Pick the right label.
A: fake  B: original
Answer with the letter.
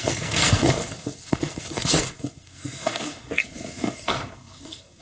A